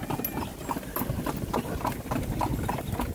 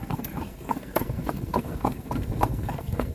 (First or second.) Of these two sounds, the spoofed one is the second